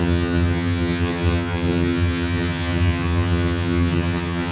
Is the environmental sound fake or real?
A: fake